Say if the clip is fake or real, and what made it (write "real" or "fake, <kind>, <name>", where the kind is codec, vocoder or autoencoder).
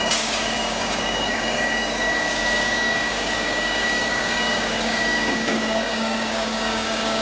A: fake, codec, DAC